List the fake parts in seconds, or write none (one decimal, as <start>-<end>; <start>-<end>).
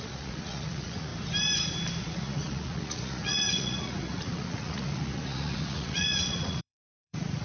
0.0-1.1; 2.0-7.4